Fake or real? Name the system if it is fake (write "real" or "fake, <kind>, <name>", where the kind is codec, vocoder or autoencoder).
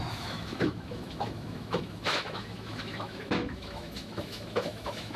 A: fake, autoencoder, DAC-VAE